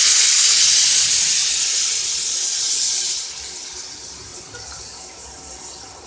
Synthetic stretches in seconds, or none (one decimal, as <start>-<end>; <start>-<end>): none